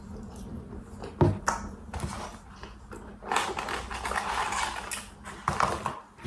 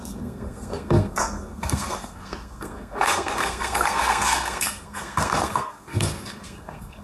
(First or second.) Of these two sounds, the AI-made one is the second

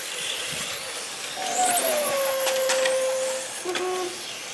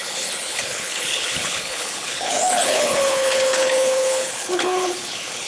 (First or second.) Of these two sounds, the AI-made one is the second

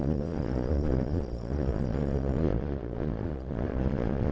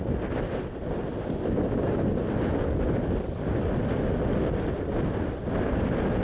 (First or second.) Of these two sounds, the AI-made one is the first